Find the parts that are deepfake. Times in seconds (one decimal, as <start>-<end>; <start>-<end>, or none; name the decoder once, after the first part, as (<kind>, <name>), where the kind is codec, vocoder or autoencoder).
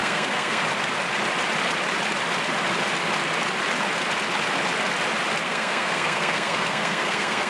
0.0-0.6 (codec, SNAC); 5.4-7.5